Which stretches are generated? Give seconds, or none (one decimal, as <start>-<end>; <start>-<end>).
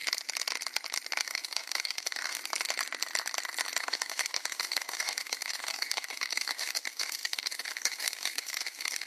1.2-2.4; 3.8-9.1